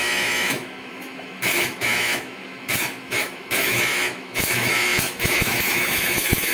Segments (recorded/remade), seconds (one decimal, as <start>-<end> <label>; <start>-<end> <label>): 0.0-6.5 remade